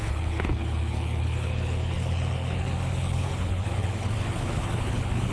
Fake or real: fake